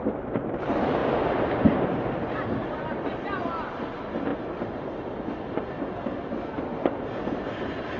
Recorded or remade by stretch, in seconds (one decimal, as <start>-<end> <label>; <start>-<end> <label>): 0.0-8.0 recorded